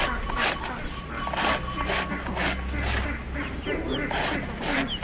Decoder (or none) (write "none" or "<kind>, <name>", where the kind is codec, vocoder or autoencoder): none